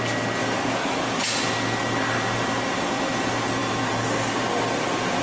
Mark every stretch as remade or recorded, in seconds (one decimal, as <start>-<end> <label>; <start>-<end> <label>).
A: 0.0-0.4 recorded; 0.4-1.2 remade; 1.2-5.2 recorded